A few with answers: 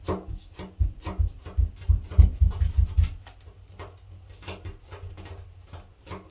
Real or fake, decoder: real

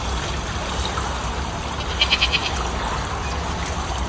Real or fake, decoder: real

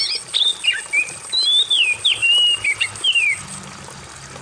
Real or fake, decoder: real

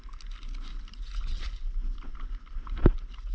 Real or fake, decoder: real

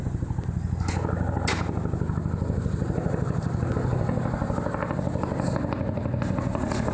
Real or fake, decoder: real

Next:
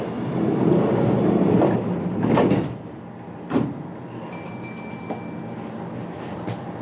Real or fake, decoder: real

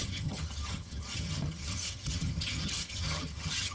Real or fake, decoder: fake, vocoder, HiFi-GAN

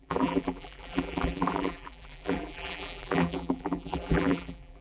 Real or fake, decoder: fake, vocoder, BigVGAN v2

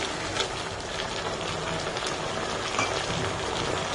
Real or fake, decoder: real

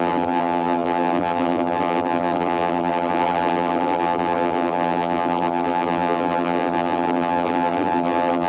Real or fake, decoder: fake, vocoder, BigVGAN v2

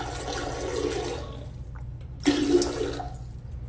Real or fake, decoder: real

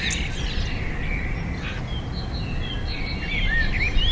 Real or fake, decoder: real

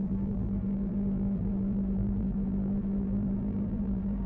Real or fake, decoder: fake, vocoder, BigVGAN v2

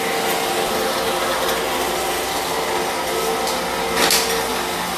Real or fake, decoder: real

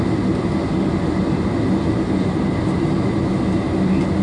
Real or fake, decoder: real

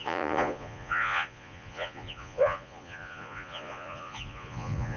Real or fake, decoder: fake, vocoder, Vocos